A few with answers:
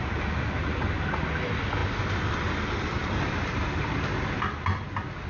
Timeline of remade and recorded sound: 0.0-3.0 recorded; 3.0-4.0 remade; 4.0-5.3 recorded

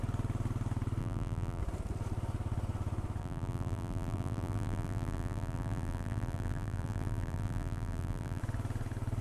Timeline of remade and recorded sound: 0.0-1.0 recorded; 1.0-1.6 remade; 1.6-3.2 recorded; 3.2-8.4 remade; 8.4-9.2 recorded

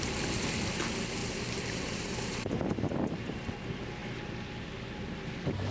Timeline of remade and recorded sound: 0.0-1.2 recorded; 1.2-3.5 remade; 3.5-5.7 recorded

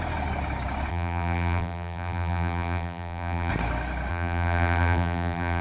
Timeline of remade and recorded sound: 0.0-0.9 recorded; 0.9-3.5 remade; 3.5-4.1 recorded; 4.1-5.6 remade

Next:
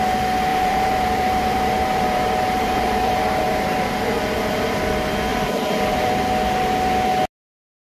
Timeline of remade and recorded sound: 0.0-0.5 recorded; 0.5-3.8 remade; 3.8-5.3 recorded; 5.3-6.1 remade; 6.1-8.0 recorded

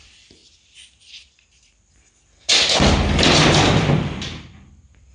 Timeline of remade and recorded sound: 0.0-0.4 remade; 0.4-3.5 recorded; 3.5-5.1 remade

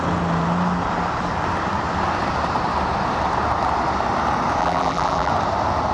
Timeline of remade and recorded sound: 0.0-4.6 recorded; 4.6-5.3 remade; 5.3-5.9 recorded

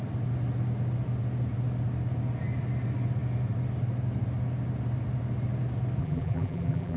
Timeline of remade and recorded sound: 0.0-6.0 recorded; 6.0-7.0 remade